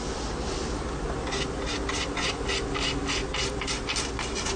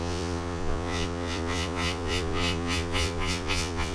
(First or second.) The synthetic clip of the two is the second